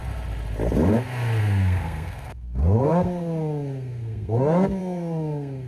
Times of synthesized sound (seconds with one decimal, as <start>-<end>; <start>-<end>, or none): 1.4-5.7